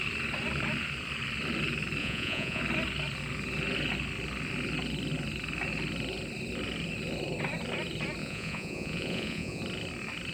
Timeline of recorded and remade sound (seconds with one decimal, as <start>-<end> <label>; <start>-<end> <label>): 0.0-2.0 recorded; 2.0-2.6 remade; 2.6-8.2 recorded; 8.2-9.6 remade; 9.6-10.3 recorded